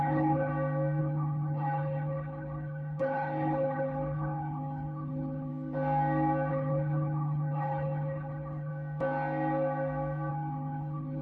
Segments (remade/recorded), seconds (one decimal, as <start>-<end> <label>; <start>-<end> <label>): 0.0-0.5 remade; 0.5-1.0 recorded; 1.0-5.5 remade; 5.5-6.5 recorded; 6.5-8.7 remade; 8.7-10.3 recorded; 10.3-11.2 remade